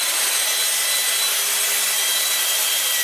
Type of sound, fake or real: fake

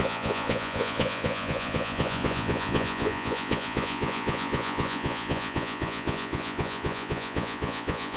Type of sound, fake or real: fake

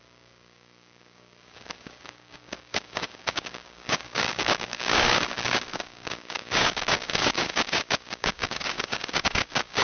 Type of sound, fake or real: fake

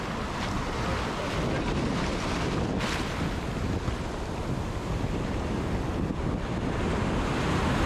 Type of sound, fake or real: real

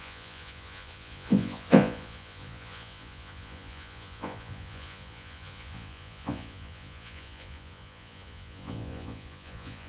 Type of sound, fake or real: fake